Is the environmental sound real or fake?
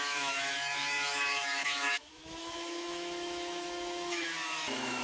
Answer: fake